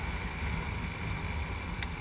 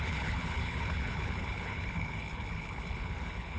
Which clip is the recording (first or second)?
first